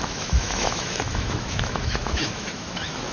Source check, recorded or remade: remade